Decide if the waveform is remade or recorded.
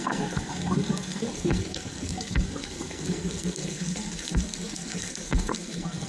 remade